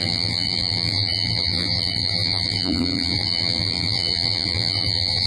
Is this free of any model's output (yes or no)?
no